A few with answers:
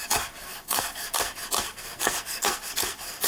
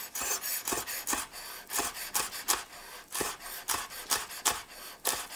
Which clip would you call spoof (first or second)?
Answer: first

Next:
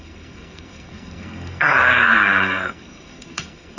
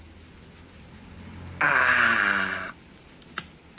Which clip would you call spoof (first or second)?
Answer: first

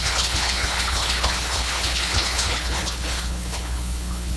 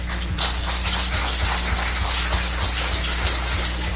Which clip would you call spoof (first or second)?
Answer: first